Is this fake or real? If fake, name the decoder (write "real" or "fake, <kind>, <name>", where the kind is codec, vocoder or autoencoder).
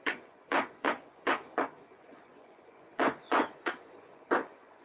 fake, vocoder, Vocos